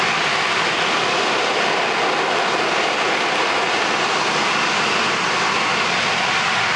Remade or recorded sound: recorded